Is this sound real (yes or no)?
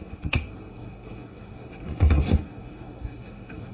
no